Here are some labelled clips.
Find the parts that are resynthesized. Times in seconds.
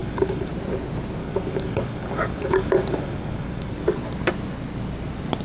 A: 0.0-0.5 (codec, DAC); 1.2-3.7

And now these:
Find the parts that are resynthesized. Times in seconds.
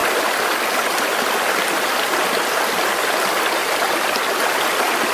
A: none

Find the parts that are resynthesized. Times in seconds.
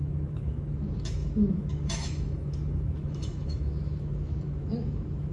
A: 0.0-5.3 (autoencoder, DAC-VAE)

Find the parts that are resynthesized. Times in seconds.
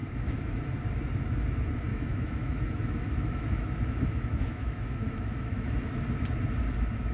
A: 0.0-0.6 (autoencoder, DAC-VAE); 1.9-5.7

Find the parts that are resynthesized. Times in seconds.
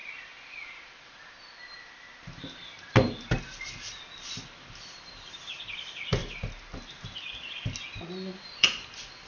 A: 3.4-6.2 (vocoder, BigVGAN v2); 8.4-9.3